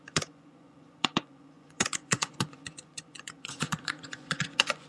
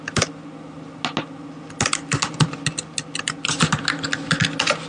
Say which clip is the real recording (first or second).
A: second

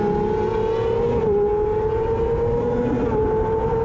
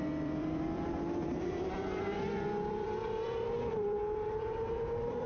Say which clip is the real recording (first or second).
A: first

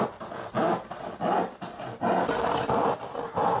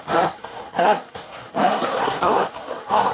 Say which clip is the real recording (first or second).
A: first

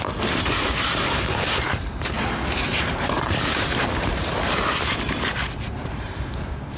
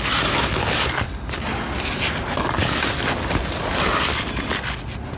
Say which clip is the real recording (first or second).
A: second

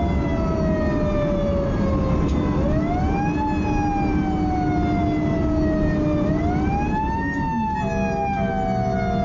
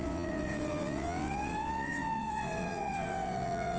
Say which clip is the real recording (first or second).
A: first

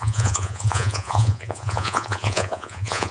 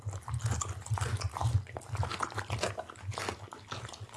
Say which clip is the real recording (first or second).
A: second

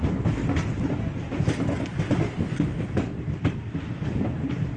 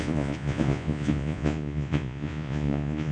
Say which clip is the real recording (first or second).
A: first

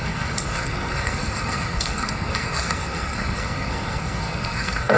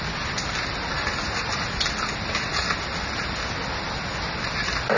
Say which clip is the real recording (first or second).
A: second